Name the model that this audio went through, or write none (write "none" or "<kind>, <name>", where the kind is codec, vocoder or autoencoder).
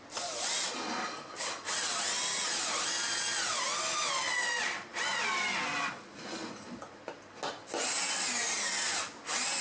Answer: none